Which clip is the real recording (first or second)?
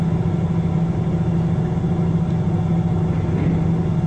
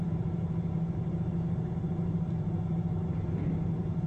first